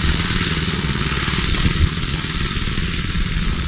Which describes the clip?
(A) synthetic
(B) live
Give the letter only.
A